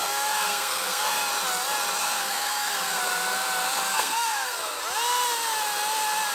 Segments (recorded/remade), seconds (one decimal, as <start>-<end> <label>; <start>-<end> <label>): 0.0-1.3 remade; 1.3-2.0 recorded; 2.0-3.0 remade; 3.0-3.9 recorded; 3.9-4.8 remade; 4.8-6.3 recorded

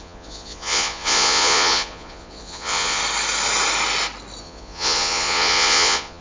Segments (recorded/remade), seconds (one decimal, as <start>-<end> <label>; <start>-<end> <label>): 0.0-3.0 remade; 3.0-4.4 recorded; 4.4-6.2 remade

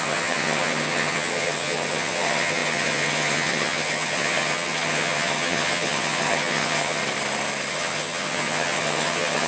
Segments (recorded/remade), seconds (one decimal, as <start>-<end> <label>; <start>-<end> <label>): 0.0-7.0 remade; 7.0-7.7 recorded; 7.7-9.5 remade

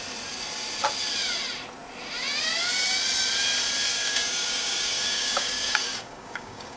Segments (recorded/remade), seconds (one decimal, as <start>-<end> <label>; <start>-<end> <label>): 0.0-3.9 recorded; 3.9-6.8 remade

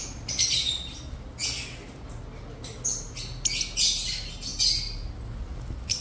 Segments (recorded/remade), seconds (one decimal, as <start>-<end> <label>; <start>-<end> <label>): 0.0-6.0 recorded

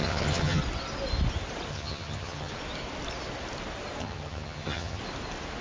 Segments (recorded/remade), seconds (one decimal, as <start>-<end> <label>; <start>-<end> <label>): 0.0-0.6 remade; 0.6-1.7 recorded; 1.7-2.5 remade; 2.5-4.0 recorded; 4.0-5.0 remade; 5.0-5.6 recorded